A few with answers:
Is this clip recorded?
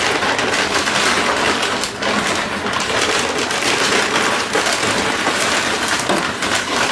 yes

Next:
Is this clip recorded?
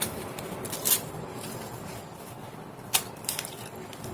yes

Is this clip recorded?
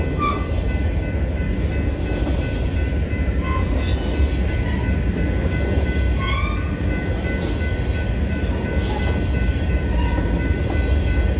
yes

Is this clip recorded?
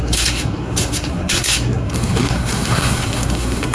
no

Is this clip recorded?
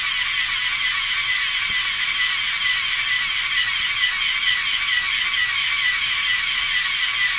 yes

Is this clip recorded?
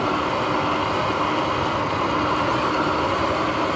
yes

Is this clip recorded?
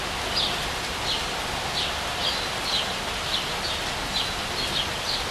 yes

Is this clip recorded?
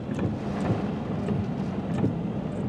yes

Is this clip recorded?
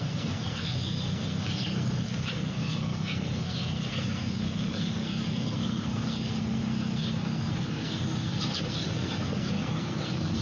no